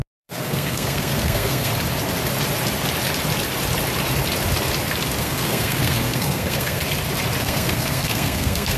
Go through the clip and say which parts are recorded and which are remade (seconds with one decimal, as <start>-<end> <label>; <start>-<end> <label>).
0.0-1.7 remade; 1.7-5.2 recorded; 5.2-6.8 remade; 6.8-7.4 recorded; 7.4-8.8 remade